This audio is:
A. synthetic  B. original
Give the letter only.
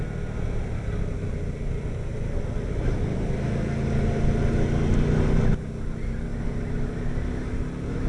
B